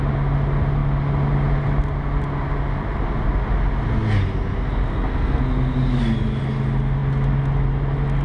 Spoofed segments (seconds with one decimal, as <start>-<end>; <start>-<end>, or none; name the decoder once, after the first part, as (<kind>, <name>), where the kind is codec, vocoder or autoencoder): 4.9-5.4 (codec, SNAC)